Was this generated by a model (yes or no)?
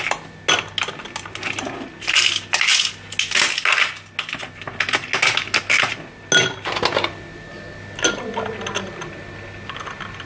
no